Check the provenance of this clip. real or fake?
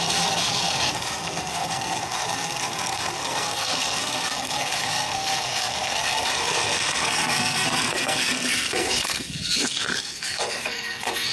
fake